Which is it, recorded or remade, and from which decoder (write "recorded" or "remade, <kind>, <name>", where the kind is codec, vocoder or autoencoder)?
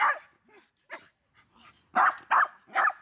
recorded